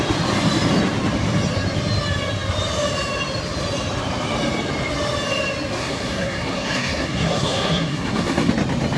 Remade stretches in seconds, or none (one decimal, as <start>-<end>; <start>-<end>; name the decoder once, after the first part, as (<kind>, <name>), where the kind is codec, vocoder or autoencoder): 5.8-8.5 (codec, SNAC)